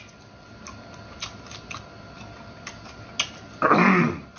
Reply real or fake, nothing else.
real